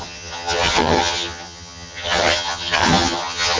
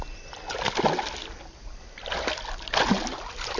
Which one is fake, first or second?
first